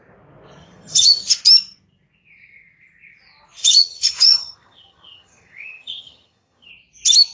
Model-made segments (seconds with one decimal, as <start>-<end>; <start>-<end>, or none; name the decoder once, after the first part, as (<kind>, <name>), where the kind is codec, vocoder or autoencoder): 0.6-1.3 (vocoder, HiFi-GAN); 3.6-6.7